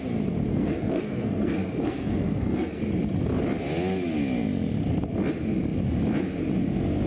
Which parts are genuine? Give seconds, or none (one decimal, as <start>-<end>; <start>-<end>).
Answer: 0.0-0.5; 2.8-7.1